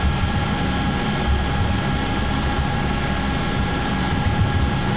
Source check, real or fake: real